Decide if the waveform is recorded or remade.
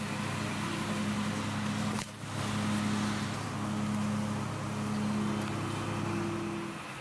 recorded